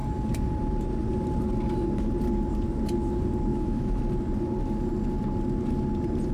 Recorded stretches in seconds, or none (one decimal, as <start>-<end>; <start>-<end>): 0.0-3.5; 4.0-6.3